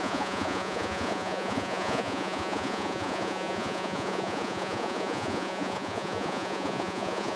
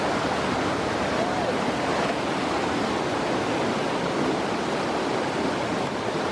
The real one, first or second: second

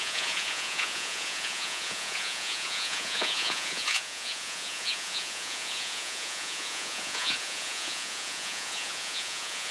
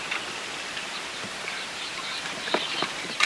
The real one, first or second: second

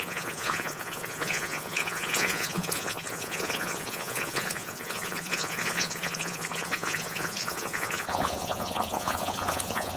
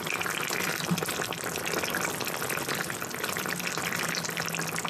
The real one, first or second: second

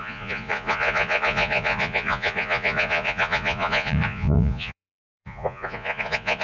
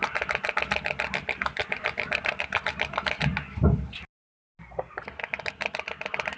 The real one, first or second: second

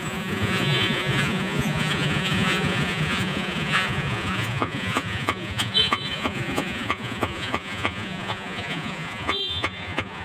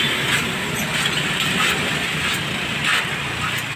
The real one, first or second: second